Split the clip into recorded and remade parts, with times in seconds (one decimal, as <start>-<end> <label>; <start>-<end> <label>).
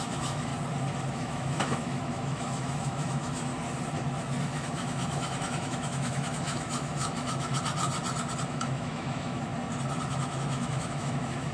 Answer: 0.0-0.5 remade; 0.5-1.1 recorded; 1.1-3.5 remade; 3.5-4.4 recorded; 4.4-7.5 remade; 7.5-8.5 recorded; 8.5-9.5 remade; 9.5-10.1 recorded; 10.1-11.5 remade